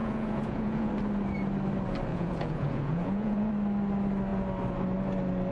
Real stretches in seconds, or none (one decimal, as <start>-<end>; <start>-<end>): 0.9-2.1; 3.5-5.5

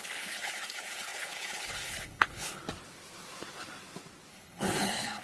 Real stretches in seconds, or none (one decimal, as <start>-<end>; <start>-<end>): 2.6-4.3

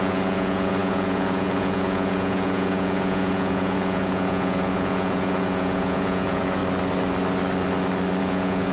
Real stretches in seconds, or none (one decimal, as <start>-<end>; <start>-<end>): 6.6-8.2

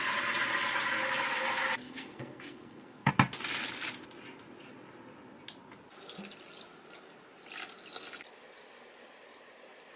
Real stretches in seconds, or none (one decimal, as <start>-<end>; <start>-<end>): 0.0-1.8; 3.1-10.0

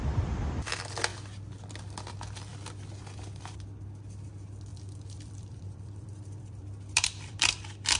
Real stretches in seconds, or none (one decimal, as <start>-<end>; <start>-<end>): 0.0-4.7; 7.4-8.0